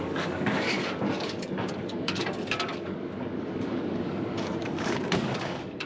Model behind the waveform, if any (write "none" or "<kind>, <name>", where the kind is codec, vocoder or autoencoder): codec, DAC